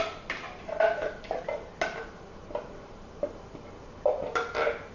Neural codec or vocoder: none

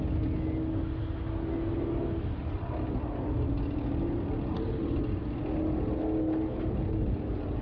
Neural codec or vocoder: none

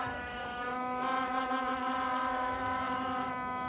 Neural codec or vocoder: autoencoder, DAC-VAE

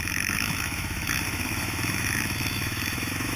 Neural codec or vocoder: autoencoder, DAC-VAE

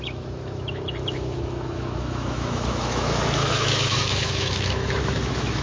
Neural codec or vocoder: autoencoder, DAC-VAE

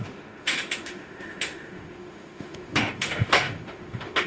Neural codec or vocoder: autoencoder, DAC-VAE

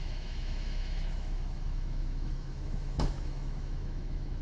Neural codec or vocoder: autoencoder, DAC-VAE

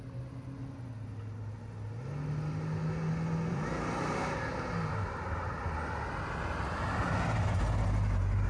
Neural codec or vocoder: none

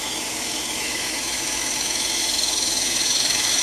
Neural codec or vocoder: autoencoder, DAC-VAE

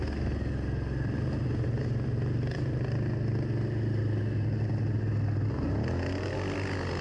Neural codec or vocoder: none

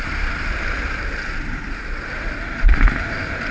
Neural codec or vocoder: none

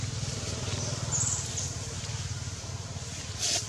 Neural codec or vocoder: none